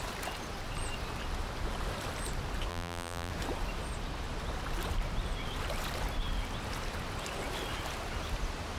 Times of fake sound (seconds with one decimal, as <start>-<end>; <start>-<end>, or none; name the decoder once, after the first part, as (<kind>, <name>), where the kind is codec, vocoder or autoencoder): 2.7-3.3 (vocoder, BigVGAN v2)